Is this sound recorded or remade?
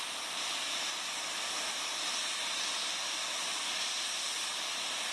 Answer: remade